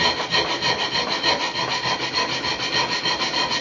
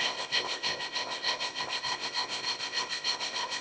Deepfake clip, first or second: second